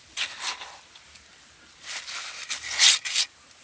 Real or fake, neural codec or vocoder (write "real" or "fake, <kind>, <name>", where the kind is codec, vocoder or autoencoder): real